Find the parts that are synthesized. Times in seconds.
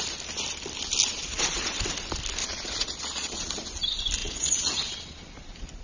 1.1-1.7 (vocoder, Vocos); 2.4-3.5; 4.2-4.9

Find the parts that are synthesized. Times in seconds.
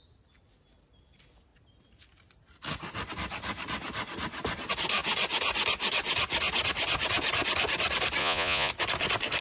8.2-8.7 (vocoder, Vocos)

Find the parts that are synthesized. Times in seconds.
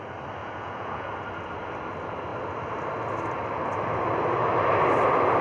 0.4-1.1 (vocoder, Vocos)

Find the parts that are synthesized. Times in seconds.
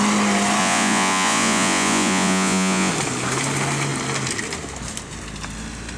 0.6-2.9 (vocoder, Vocos)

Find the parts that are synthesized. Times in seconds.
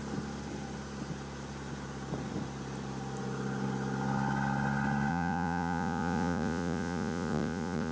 5.1-7.9 (vocoder, Vocos)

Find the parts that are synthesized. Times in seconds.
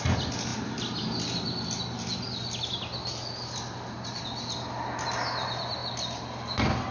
none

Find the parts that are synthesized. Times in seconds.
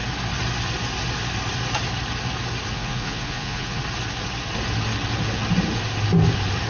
2.7-3.8 (vocoder, Vocos)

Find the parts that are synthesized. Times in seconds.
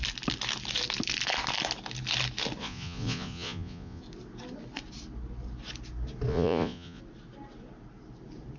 2.6-4.0 (vocoder, Vocos); 6.3-7.0